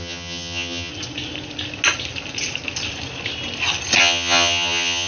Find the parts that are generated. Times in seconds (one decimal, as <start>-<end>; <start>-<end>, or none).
0.0-0.9; 4.0-5.1